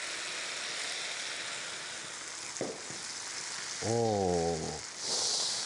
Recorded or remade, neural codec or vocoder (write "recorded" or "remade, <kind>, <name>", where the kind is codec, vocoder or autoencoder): recorded